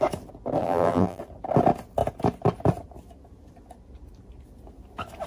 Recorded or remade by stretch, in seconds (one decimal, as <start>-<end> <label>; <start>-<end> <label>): 0.0-0.6 recorded; 0.6-1.2 remade; 1.2-5.3 recorded